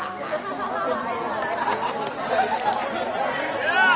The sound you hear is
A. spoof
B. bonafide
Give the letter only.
B